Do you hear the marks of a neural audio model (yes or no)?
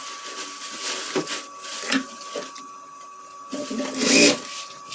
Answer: no